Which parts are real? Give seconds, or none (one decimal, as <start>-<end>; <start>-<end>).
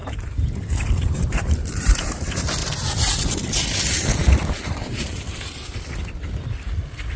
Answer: 2.0-2.6; 3.2-4.2; 5.7-7.2